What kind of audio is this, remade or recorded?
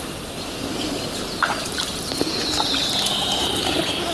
recorded